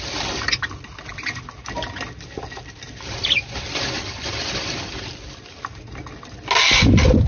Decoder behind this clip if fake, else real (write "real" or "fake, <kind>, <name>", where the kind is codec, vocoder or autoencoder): real